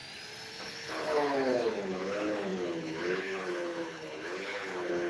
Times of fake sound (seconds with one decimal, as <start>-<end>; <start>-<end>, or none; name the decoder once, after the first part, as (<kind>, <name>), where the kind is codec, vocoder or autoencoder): 0.5-5.1 (codec, HILCodec)